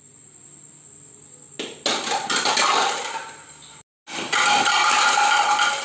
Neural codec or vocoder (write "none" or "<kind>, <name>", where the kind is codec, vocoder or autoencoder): none